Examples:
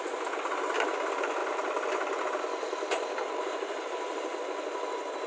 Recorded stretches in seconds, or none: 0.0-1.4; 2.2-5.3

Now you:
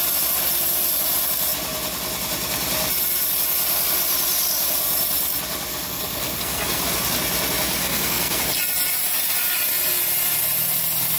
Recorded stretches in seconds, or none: 0.0-5.7; 6.8-7.8; 8.4-11.2

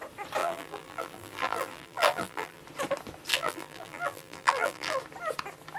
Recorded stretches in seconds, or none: 0.0-0.4; 2.6-3.3; 5.0-5.8

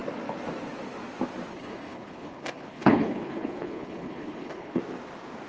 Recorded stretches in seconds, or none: 0.0-1.5; 4.8-5.5

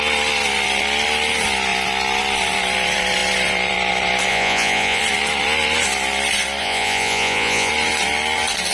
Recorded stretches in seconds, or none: 0.0-4.3; 5.0-6.6; 7.7-8.7